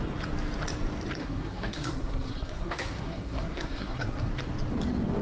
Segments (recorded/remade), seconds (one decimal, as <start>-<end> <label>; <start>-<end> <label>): 0.0-1.2 recorded; 1.2-4.3 remade; 4.3-5.2 recorded

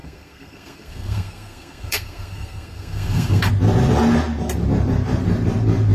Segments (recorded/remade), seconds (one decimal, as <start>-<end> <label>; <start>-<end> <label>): 0.0-3.5 remade; 3.5-5.9 recorded

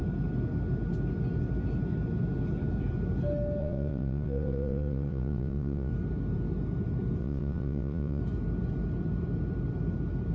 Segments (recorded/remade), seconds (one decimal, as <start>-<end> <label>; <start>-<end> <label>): 0.0-3.6 recorded; 3.6-5.9 remade; 5.9-7.2 recorded; 7.2-8.2 remade; 8.2-10.3 recorded

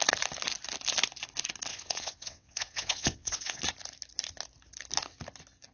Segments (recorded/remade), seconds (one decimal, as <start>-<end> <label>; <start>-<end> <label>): 0.0-1.7 recorded; 1.7-3.6 remade; 3.6-5.7 recorded

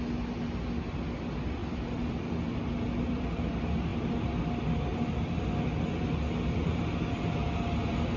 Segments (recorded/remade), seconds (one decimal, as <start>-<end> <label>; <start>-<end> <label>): 0.0-1.6 recorded; 1.6-3.5 remade; 3.5-3.9 recorded; 3.9-4.4 remade; 4.4-8.2 recorded